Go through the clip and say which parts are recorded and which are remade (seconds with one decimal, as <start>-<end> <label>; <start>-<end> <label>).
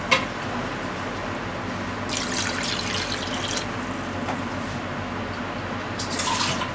0.0-6.7 recorded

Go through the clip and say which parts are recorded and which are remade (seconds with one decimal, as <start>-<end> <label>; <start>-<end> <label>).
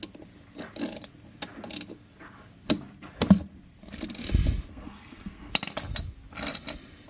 0.0-4.7 recorded; 4.7-5.5 remade; 5.5-7.1 recorded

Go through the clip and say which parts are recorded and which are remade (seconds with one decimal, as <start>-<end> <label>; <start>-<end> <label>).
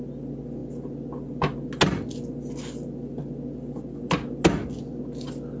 0.0-5.6 recorded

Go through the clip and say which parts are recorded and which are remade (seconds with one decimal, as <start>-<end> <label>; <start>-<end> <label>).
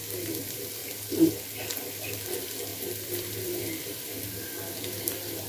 0.0-0.8 recorded; 0.8-1.3 remade; 1.3-2.7 recorded; 2.7-4.5 remade; 4.5-5.5 recorded